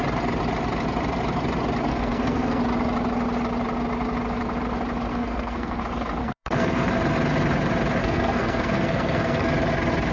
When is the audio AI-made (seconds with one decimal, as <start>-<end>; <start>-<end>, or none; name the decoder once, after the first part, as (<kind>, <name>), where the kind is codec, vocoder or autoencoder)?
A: 1.9-2.6 (codec, SNAC); 5.1-5.8; 6.2-6.9; 8.0-9.5